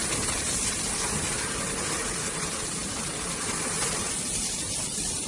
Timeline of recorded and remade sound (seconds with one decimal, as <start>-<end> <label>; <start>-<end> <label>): 0.0-5.3 recorded